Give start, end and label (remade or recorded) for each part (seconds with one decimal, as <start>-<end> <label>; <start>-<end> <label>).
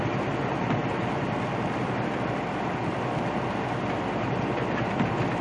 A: 0.0-5.4 recorded